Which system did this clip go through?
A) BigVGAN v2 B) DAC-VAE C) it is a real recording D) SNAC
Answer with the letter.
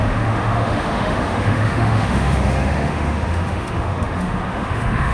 B